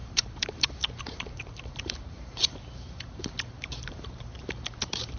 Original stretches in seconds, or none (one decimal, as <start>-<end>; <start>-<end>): none